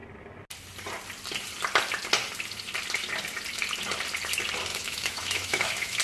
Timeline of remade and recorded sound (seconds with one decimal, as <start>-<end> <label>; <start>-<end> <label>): 0.0-4.7 recorded; 4.7-6.0 remade